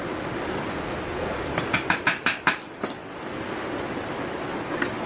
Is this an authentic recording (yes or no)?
yes